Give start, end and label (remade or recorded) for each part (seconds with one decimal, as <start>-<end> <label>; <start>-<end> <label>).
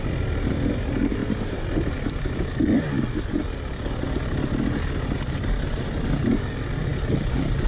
0.0-7.7 recorded